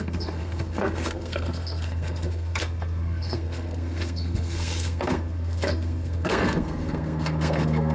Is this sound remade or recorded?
remade